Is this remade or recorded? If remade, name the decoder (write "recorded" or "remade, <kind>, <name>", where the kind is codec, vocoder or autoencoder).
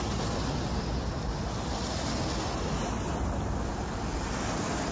recorded